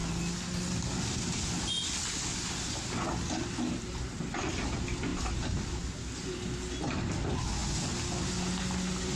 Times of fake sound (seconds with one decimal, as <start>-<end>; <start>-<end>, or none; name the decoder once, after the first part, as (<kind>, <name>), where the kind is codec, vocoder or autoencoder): none